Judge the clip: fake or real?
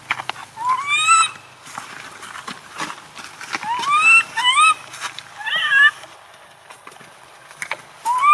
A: real